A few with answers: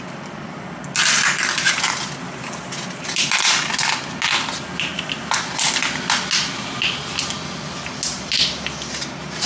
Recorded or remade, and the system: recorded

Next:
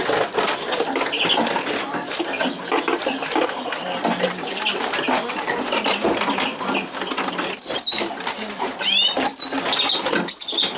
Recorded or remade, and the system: recorded